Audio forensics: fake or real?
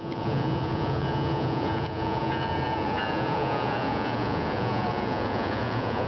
fake